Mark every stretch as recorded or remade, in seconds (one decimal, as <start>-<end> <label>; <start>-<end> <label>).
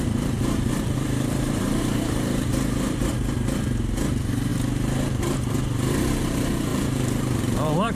0.0-3.1 remade; 3.1-4.1 recorded; 4.1-4.5 remade; 4.5-6.2 recorded; 6.2-8.0 remade